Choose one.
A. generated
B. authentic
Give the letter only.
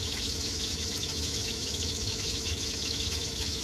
A